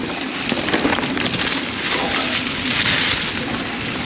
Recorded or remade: recorded